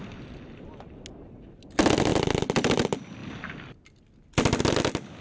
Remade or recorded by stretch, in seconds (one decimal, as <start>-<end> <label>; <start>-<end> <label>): 0.0-5.2 recorded